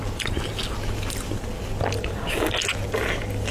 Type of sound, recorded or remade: recorded